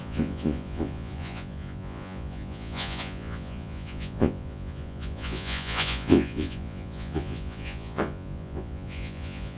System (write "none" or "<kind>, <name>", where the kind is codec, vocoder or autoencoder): vocoder, Vocos